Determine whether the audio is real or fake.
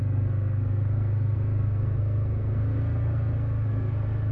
fake